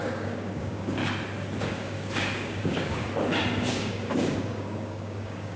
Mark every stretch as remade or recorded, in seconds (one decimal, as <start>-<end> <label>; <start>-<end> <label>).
0.0-1.0 remade; 1.0-1.6 recorded; 1.6-3.0 remade; 3.0-3.7 recorded; 3.7-5.6 remade